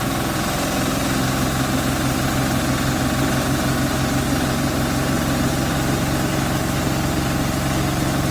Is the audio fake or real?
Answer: real